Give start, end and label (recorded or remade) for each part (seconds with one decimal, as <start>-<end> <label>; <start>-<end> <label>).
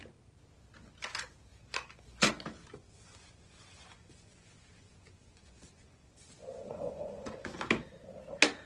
0.0-1.5 recorded; 1.5-2.3 remade; 2.3-2.8 recorded; 2.8-7.5 remade; 7.5-8.7 recorded